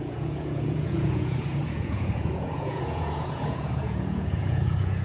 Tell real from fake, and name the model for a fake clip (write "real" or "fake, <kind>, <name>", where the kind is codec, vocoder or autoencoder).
fake, vocoder, Vocos